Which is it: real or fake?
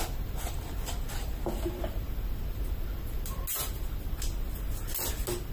real